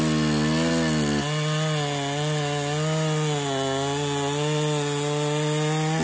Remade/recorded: recorded